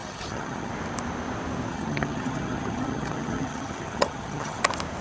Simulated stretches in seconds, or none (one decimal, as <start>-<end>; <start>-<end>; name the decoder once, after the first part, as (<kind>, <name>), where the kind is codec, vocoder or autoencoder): 0.0-0.7 (vocoder, HiFi-GAN); 1.7-4.6